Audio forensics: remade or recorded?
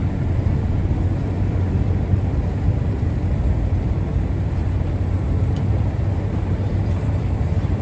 remade